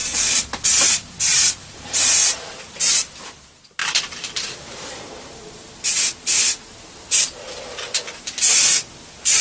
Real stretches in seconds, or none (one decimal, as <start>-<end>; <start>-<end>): 0.0-9.4